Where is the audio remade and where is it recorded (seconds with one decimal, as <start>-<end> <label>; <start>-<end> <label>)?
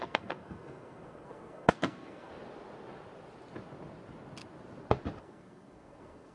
0.0-2.3 remade; 2.3-5.2 recorded; 5.2-6.3 remade